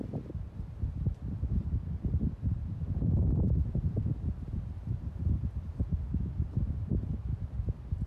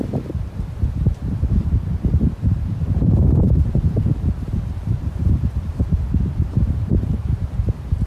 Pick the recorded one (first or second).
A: first